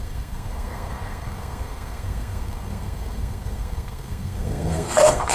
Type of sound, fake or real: fake